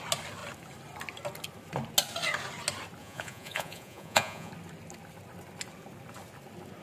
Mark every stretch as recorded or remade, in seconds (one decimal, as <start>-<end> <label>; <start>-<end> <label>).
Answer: 0.0-3.0 recorded; 3.0-4.5 remade; 4.5-6.8 recorded